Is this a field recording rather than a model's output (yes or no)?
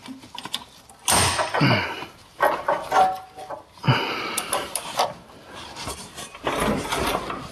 yes